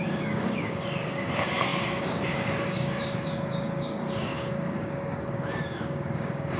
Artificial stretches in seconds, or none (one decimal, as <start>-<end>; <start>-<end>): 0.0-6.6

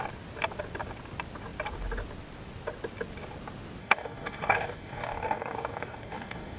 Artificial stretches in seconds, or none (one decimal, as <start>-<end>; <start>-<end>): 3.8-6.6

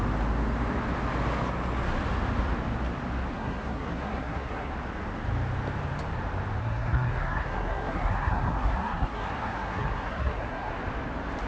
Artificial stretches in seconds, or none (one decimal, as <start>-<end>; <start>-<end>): 3.3-4.7; 6.6-10.7

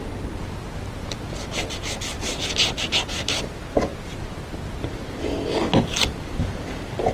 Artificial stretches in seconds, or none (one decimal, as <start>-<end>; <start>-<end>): none

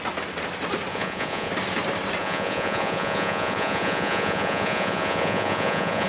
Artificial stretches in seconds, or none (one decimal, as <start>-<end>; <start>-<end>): 0.9-1.5; 2.2-6.1

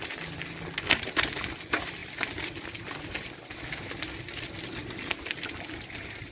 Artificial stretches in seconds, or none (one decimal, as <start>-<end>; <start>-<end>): none